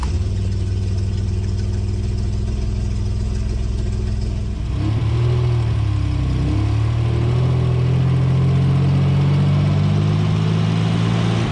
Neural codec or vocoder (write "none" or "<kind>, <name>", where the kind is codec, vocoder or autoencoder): none